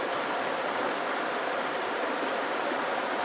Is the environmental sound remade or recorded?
recorded